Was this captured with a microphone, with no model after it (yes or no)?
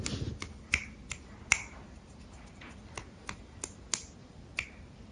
yes